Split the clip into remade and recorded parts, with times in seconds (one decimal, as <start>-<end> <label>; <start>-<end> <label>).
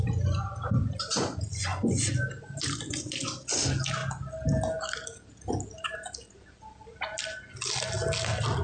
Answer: 0.0-1.7 recorded; 1.7-3.0 remade; 3.0-8.6 recorded